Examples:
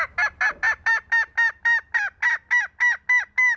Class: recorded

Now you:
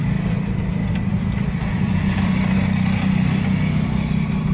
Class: recorded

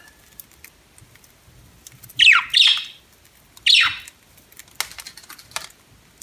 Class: recorded